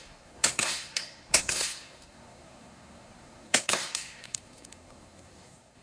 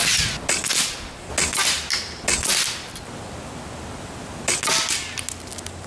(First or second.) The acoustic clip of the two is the second